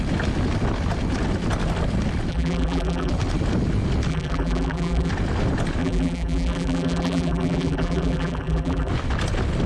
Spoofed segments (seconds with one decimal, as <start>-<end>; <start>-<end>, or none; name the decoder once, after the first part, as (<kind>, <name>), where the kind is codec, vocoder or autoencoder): 2.3-3.1 (vocoder, BigVGAN v2); 4.1-5.1; 5.8-8.9